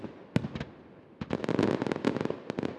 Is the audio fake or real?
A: real